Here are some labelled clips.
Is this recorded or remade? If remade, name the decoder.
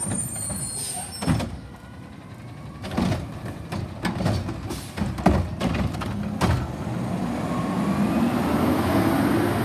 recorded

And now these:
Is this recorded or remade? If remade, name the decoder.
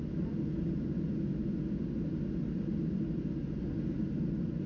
recorded